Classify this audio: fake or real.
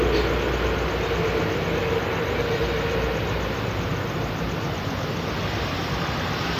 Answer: real